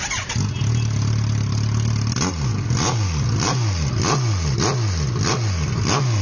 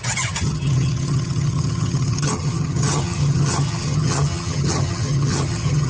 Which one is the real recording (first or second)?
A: first